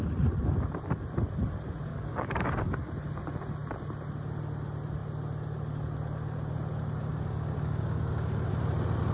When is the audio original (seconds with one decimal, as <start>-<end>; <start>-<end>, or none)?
0.0-1.9; 2.9-7.1; 8.5-9.1